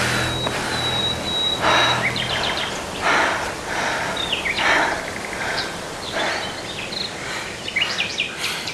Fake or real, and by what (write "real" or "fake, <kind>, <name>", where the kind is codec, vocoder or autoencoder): real